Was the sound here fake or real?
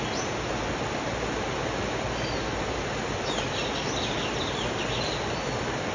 real